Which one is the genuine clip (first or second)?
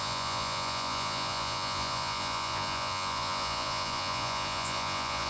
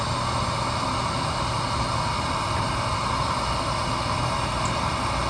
second